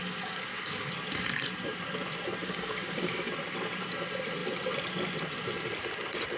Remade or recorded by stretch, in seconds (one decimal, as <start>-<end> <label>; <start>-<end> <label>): 0.0-0.9 remade; 0.9-2.4 recorded; 2.4-3.3 remade; 3.3-6.4 recorded